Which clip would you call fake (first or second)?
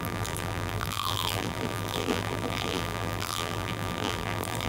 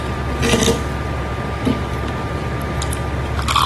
first